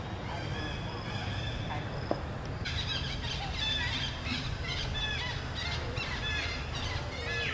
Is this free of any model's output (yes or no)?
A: yes